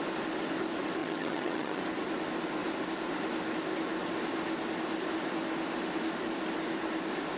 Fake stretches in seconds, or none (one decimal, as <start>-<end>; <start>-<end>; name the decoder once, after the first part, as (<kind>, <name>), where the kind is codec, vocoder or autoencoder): 1.0-1.8 (vocoder, HiFi-GAN)